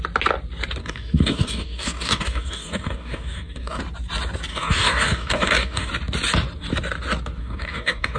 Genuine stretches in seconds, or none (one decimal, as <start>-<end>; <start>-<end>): 0.0-0.8; 3.8-4.5; 5.9-7.4